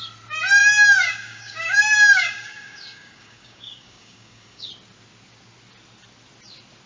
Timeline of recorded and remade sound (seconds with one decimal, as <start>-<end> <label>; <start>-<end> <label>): 0.0-0.6 recorded; 0.6-4.7 remade; 4.7-6.9 recorded